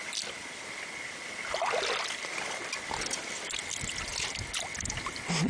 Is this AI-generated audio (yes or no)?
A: no